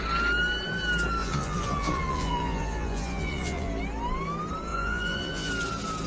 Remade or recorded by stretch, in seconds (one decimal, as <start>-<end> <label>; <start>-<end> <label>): 0.0-1.2 recorded; 1.2-3.7 remade; 3.7-4.7 recorded; 4.7-5.5 remade; 5.5-6.1 recorded